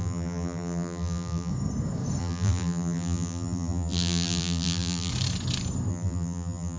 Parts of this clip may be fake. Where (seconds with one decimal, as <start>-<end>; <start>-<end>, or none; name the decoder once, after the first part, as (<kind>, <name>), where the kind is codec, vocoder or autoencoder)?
0.0-1.5 (vocoder, BigVGAN v2); 2.2-5.1; 5.9-6.8